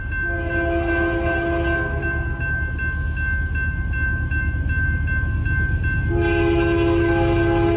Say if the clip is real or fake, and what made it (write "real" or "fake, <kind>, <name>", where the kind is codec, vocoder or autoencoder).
real